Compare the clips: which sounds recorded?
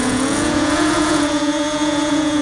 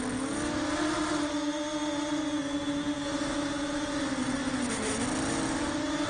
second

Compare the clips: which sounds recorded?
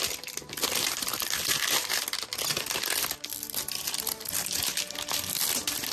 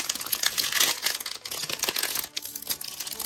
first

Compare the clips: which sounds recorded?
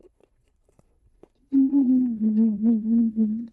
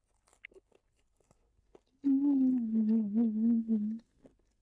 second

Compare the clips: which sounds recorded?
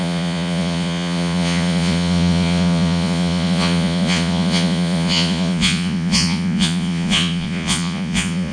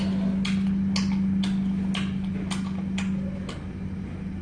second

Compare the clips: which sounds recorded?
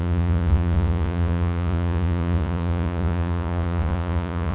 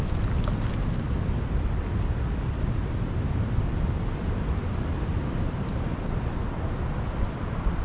second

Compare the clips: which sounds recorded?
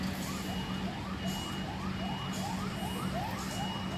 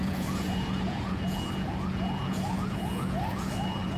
first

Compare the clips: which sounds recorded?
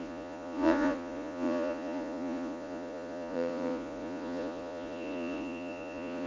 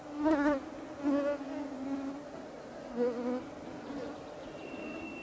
second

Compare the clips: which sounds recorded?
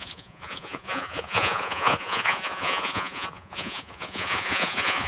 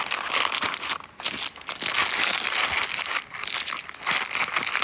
second